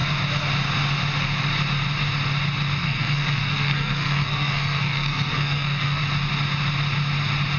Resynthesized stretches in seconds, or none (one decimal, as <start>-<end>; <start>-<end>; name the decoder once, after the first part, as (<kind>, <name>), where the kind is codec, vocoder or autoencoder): 2.8-6.0 (codec, SNAC)